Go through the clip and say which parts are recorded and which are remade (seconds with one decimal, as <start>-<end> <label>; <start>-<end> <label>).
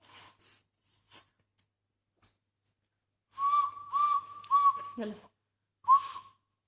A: 0.0-3.8 recorded; 3.8-6.7 remade